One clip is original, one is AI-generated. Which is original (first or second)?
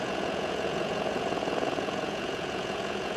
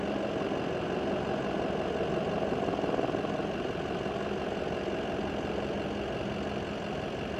second